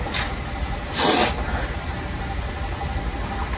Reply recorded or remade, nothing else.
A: recorded